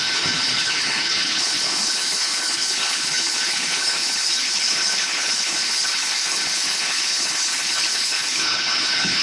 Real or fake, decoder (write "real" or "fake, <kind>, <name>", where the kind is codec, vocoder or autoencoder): fake, codec, HILCodec